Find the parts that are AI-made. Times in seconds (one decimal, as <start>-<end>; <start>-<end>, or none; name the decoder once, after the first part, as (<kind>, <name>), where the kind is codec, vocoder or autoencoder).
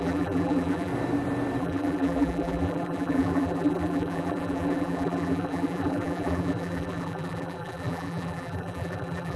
0.0-0.9 (vocoder, BigVGAN v2); 1.6-9.4